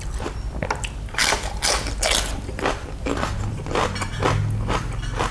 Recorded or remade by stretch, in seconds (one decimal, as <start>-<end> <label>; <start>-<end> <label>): 0.0-5.3 recorded